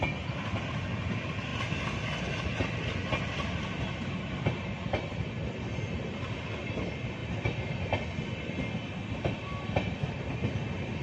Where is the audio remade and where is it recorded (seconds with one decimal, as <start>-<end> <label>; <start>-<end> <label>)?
0.0-11.0 recorded